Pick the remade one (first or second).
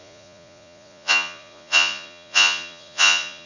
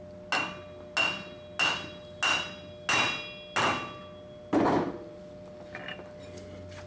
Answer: first